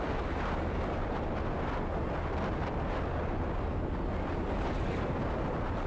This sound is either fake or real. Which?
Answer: real